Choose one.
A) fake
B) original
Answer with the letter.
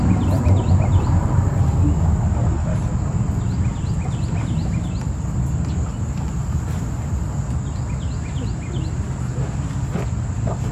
B